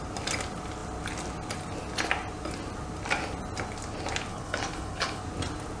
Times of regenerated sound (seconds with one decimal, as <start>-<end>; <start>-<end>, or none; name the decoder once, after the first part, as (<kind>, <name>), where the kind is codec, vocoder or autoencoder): 4.3-5.2 (codec, HILCodec)